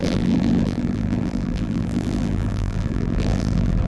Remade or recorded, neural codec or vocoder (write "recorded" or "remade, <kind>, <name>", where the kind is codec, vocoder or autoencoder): remade, vocoder, BigVGAN v2